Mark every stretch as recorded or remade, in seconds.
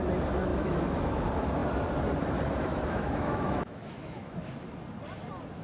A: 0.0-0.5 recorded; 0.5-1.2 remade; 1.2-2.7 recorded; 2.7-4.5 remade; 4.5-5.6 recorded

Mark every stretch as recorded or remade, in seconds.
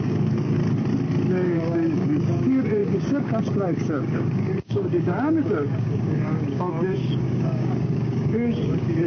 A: 0.0-0.6 remade; 0.6-1.3 recorded; 1.3-9.1 remade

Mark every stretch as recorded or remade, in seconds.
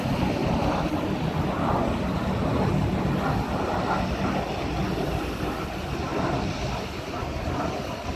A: 0.0-6.1 recorded; 6.1-7.6 remade; 7.6-8.2 recorded